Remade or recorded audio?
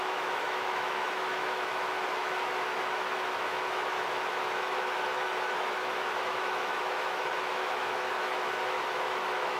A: remade